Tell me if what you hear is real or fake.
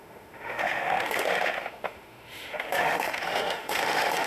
fake